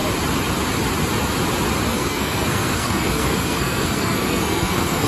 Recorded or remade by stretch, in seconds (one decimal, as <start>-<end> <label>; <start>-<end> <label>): 0.0-1.9 recorded; 1.9-5.1 remade